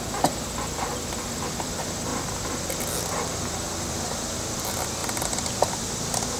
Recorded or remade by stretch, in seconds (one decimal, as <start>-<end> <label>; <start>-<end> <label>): 0.0-6.4 recorded